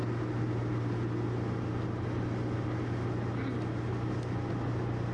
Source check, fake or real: real